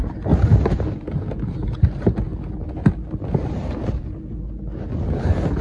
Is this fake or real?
real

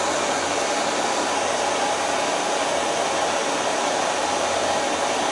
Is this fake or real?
fake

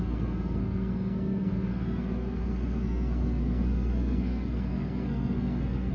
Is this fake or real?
fake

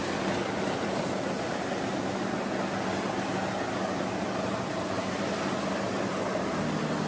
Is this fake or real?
real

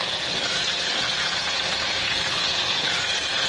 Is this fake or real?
fake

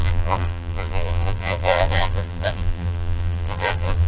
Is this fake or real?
fake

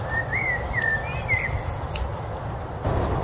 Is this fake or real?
real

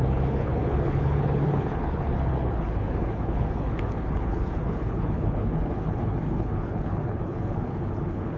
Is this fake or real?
fake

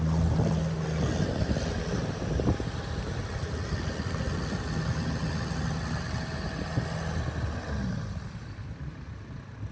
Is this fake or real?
real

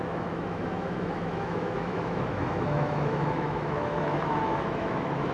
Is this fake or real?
fake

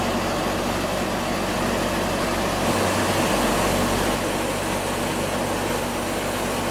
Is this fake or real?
real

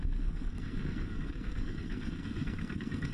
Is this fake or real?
fake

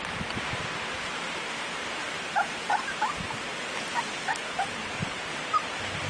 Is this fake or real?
real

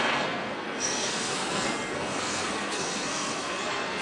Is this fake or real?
fake